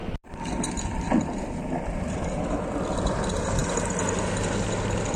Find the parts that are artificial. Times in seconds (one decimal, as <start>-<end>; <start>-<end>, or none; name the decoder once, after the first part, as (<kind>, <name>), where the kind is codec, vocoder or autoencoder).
0.0-2.4 (vocoder, BigVGAN v2)